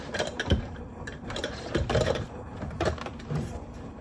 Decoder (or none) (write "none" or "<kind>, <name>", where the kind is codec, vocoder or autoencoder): vocoder, BigVGAN v2